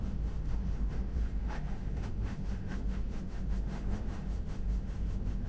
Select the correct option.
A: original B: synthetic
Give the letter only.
B